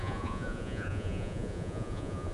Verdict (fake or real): fake